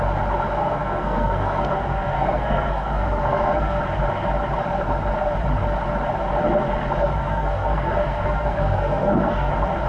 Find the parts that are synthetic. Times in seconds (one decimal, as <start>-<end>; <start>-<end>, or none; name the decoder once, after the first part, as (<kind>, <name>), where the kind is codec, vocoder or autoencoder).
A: 0.6-3.8 (codec, SNAC); 7.2-9.5